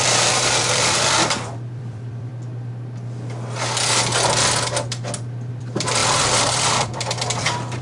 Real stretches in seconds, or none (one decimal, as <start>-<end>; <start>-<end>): 2.3-5.5

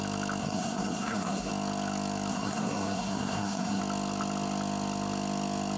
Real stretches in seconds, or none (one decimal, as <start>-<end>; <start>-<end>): 0.0-0.4; 1.5-2.3; 3.8-5.8